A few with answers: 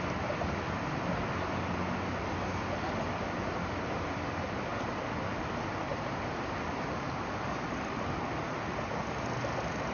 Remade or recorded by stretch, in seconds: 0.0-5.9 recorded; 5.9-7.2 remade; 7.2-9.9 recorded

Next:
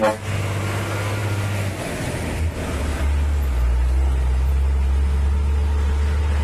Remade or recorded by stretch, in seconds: 0.0-6.4 recorded

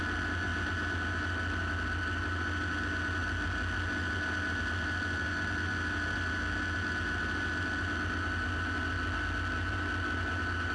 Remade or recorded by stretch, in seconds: 0.0-10.7 recorded

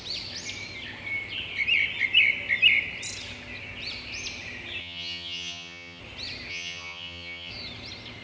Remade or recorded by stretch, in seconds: 0.0-4.8 recorded; 4.8-6.0 remade; 6.0-6.5 recorded; 6.5-7.5 remade; 7.5-8.2 recorded

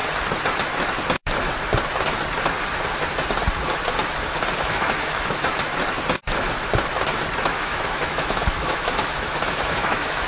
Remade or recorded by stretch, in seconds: 0.0-4.7 recorded; 4.7-5.5 remade; 5.5-7.4 recorded; 7.4-10.3 remade

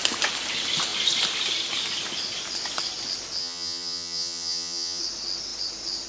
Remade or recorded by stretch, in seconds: 0.0-3.4 recorded; 3.4-5.0 remade; 5.0-6.1 recorded

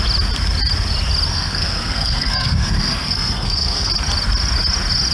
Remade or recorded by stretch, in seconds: 0.0-1.3 recorded; 1.3-3.9 remade; 3.9-5.1 recorded

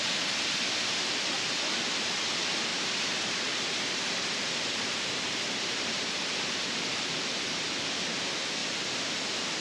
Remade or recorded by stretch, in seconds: 0.0-2.7 recorded; 2.7-7.8 remade; 7.8-9.6 recorded